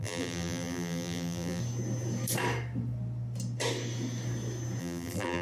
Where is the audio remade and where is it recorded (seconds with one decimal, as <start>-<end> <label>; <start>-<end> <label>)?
0.0-1.6 remade; 1.6-4.8 recorded; 4.8-5.4 remade